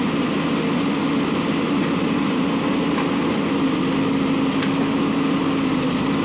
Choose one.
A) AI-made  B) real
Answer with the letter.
B